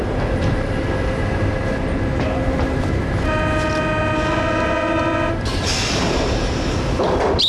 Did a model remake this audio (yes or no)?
no